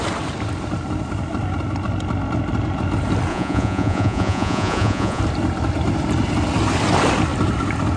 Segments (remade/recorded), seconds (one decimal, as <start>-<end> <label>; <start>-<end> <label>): 0.0-3.3 recorded; 3.3-5.2 remade; 5.2-8.0 recorded